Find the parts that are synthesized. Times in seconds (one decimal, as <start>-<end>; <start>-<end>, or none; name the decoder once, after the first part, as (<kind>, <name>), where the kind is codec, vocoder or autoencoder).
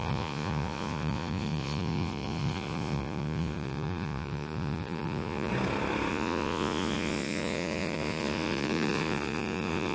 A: 0.0-5.5 (vocoder, Vocos); 6.1-9.9